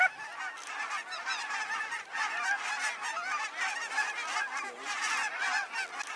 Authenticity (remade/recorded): recorded